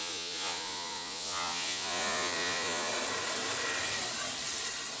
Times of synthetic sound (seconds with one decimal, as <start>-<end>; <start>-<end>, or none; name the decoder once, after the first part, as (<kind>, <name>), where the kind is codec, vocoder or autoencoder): 0.0-2.9 (vocoder, Vocos)